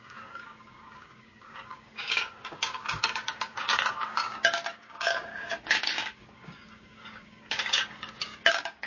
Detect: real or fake fake